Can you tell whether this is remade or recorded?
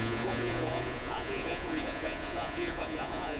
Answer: remade